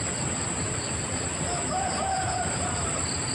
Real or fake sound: real